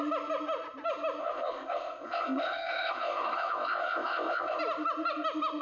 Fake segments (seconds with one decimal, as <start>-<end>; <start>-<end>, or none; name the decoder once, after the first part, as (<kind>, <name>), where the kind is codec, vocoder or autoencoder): 1.2-4.6 (codec, ZipCodec)